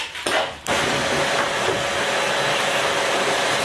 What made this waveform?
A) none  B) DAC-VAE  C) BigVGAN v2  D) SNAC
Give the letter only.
A